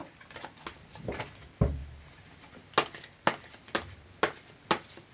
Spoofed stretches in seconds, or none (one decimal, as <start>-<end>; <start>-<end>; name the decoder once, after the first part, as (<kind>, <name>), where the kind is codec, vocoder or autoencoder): none

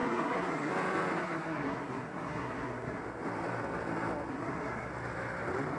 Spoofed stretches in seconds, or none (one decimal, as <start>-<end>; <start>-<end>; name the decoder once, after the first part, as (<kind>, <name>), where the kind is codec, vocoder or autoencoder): 0.0-0.7 (codec, SNAC); 1.2-3.0; 4.3-4.9

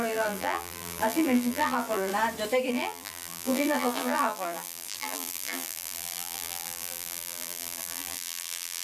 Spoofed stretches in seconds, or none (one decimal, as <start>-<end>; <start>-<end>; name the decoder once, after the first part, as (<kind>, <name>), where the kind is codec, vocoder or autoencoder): 0.0-2.1 (vocoder, BigVGAN v2); 2.7-8.8

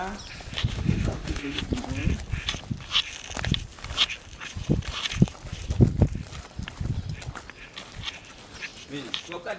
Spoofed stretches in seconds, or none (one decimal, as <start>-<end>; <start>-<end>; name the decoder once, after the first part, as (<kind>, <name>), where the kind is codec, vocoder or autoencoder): 0.6-1.6 (autoencoder, DAC-VAE)

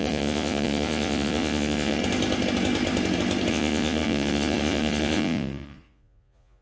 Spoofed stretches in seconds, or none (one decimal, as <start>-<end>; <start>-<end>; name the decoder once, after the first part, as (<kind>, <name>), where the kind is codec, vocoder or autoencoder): 0.0-2.0 (vocoder, Vocos); 3.5-6.6

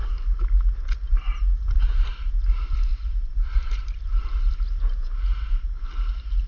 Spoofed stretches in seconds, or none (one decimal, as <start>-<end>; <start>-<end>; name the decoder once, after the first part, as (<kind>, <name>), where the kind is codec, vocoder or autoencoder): 2.9-4.2 (vocoder, BigVGAN v2)

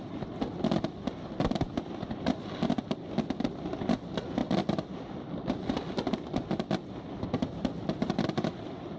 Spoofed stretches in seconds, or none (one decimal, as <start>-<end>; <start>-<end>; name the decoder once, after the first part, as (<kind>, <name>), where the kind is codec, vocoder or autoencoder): none

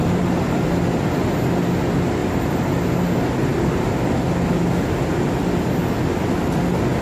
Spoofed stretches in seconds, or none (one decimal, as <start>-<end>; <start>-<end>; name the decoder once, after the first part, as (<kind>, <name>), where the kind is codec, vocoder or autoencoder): 0.0-0.7 (vocoder, BigVGAN v2); 2.2-2.8; 3.5-4.1